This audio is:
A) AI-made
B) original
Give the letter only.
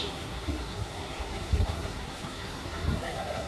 A